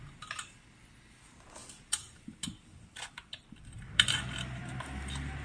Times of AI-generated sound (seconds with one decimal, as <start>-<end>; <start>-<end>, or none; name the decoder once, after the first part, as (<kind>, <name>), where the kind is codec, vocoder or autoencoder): 0.0-5.4 (vocoder, BigVGAN v2)